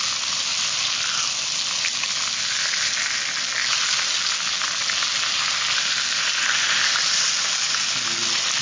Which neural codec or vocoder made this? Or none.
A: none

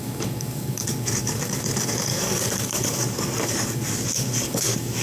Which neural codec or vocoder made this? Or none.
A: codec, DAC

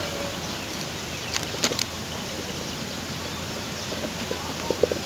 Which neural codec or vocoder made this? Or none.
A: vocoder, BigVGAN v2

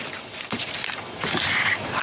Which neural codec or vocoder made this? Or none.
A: none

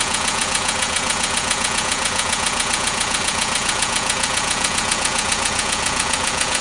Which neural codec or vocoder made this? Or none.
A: vocoder, Vocos